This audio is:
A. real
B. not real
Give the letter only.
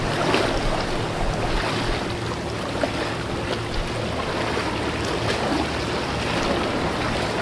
A